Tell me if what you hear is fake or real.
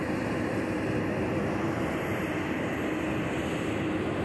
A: real